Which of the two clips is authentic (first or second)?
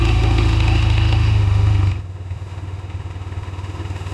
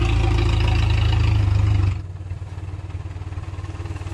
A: second